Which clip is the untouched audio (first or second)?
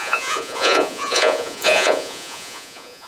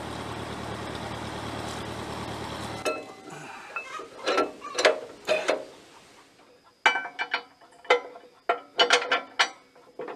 second